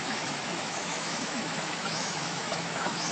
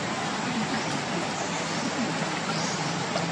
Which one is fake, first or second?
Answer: first